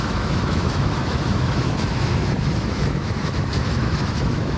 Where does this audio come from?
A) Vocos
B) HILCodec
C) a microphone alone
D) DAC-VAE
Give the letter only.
D